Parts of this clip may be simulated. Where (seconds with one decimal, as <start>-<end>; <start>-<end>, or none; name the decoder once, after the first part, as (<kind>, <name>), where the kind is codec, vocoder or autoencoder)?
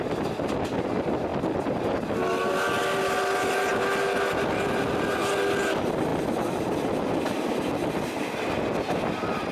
none